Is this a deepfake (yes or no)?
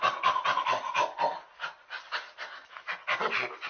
no